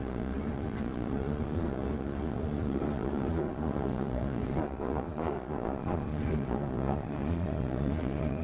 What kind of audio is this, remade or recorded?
remade